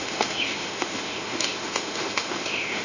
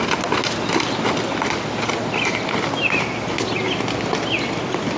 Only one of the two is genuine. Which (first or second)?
second